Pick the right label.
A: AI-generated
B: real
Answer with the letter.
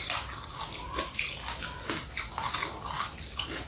B